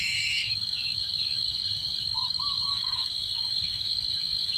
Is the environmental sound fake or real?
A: fake